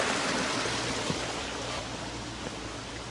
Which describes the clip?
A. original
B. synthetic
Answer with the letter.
B